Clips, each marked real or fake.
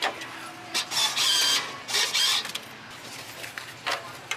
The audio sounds real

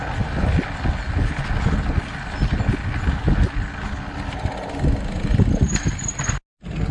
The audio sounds real